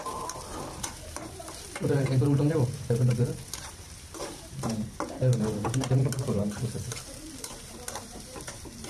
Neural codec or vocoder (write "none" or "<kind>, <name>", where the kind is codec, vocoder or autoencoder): vocoder, BigVGAN v2